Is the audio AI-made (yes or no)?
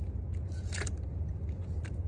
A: no